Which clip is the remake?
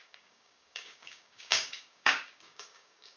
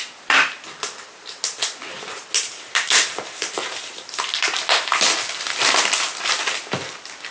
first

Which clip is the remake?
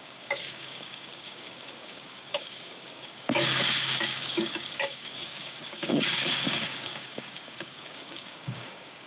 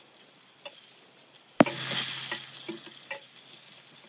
first